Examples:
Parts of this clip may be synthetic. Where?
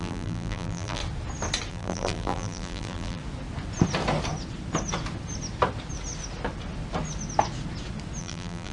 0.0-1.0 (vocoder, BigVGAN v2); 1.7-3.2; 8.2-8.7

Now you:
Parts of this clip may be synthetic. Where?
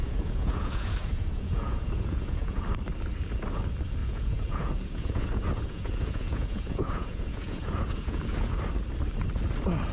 0.0-2.6 (vocoder, Vocos); 4.0-8.5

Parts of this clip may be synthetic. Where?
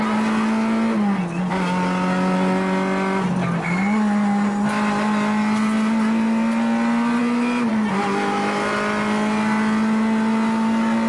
none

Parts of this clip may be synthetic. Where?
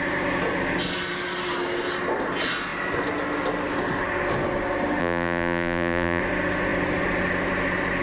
5.0-6.2 (vocoder, BigVGAN v2)